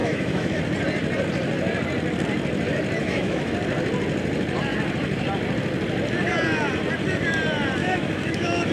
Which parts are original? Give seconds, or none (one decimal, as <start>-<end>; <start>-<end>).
0.6-3.0; 3.5-7.8